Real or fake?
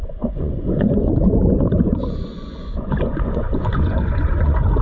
fake